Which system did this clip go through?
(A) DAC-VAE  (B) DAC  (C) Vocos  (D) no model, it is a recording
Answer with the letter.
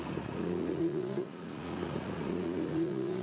C